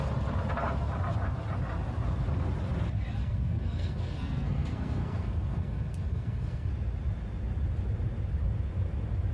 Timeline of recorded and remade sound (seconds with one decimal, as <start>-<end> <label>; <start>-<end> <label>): 0.0-3.2 recorded; 3.2-6.7 remade; 6.7-9.3 recorded